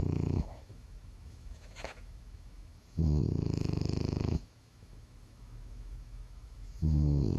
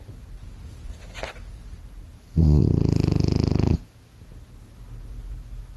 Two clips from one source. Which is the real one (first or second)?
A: second